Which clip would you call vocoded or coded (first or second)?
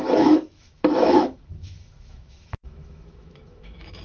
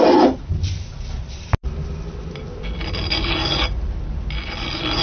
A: first